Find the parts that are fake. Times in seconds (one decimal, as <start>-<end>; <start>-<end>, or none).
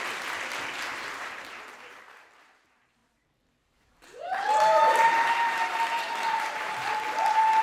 0.9-1.9; 3.0-7.6